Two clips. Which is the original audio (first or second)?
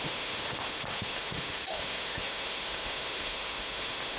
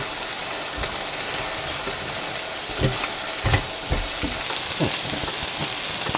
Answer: second